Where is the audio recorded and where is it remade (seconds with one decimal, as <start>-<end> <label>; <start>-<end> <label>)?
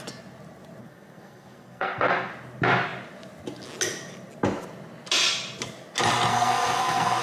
0.0-0.8 recorded; 0.8-2.3 remade; 2.3-6.3 recorded; 6.3-7.2 remade